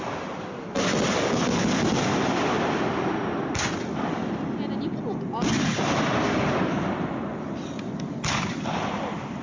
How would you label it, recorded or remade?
recorded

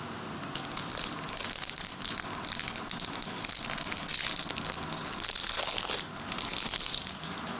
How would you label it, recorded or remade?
recorded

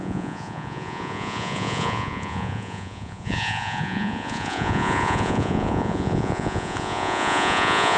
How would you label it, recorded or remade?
remade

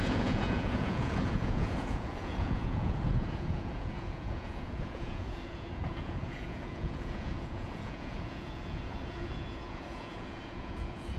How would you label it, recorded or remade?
remade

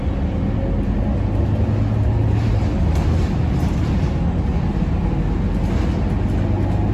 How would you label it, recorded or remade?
recorded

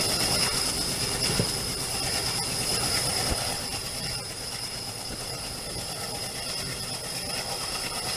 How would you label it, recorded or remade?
recorded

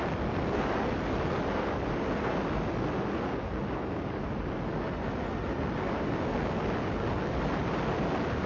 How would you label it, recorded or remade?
recorded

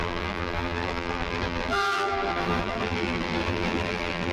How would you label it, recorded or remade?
remade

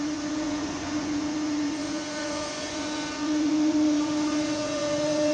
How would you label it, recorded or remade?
remade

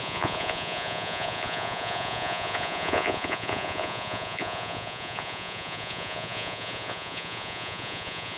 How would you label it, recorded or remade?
remade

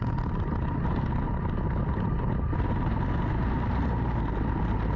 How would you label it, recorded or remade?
recorded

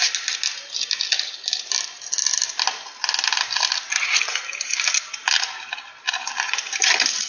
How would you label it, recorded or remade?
recorded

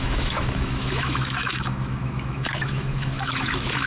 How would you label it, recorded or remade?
remade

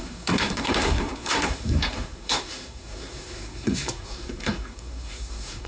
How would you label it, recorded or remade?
remade